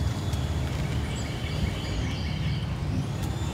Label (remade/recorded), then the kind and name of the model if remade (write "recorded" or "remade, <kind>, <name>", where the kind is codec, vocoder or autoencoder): recorded